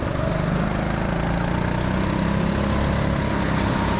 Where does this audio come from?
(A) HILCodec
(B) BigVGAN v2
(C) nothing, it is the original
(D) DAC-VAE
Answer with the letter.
C